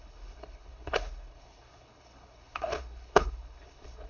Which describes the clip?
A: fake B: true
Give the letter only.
A